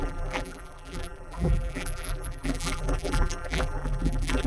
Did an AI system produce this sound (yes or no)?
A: yes